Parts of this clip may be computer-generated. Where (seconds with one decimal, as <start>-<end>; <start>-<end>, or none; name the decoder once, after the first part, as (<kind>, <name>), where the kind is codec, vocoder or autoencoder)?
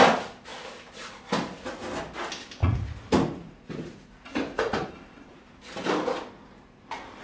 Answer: 2.6-4.9 (vocoder, Vocos)